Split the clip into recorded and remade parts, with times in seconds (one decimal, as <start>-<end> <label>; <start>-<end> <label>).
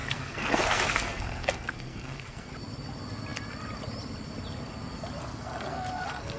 0.0-2.5 remade; 2.5-5.2 recorded; 5.2-6.4 remade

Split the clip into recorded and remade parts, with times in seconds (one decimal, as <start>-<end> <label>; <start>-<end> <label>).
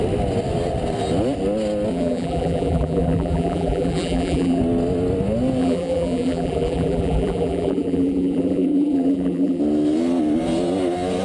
0.0-1.9 recorded; 1.9-4.6 remade; 4.6-5.6 recorded; 5.6-9.6 remade; 9.6-11.2 recorded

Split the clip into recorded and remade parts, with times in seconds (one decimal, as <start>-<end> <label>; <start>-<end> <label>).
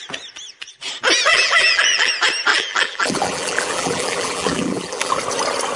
0.0-1.3 recorded; 1.3-2.1 remade; 2.1-2.5 recorded; 2.5-5.2 remade; 5.2-5.8 recorded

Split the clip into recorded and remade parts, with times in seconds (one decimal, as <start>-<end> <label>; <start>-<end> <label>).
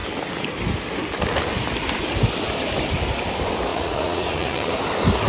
0.0-3.7 recorded; 3.7-4.7 remade; 4.7-5.3 recorded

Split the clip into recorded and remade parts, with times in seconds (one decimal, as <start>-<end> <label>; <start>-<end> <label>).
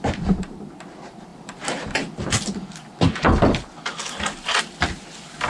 0.0-5.5 recorded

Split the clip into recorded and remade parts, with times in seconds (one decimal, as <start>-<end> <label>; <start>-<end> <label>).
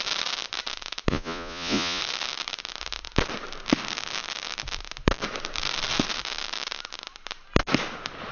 0.0-1.1 recorded; 1.1-2.0 remade; 2.0-8.3 recorded